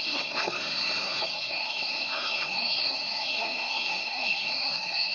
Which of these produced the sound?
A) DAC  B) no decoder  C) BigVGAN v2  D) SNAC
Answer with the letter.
D